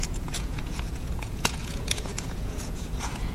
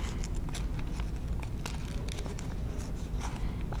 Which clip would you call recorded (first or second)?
second